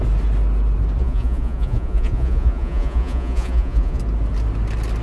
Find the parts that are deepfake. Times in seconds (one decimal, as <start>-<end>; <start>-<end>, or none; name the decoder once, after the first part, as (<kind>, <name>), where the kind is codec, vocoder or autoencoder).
1.0-4.0 (vocoder, Vocos)